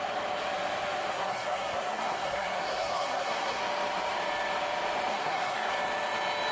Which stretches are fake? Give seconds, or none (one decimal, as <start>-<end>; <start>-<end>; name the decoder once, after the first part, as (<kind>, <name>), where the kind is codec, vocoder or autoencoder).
1.1-3.6 (codec, SNAC); 5.1-5.7